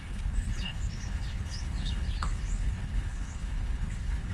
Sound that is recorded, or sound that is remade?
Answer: remade